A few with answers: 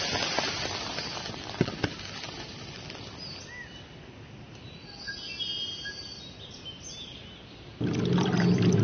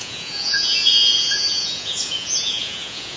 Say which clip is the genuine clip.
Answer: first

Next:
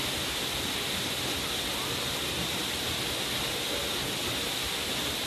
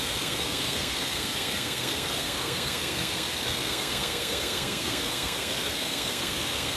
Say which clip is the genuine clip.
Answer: first